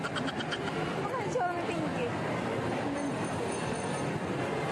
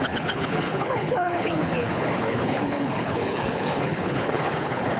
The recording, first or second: first